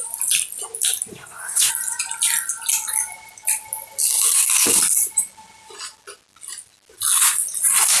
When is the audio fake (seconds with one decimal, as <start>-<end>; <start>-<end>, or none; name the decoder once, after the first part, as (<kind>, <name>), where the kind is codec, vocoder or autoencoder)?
1.1-1.7 (codec, SNAC)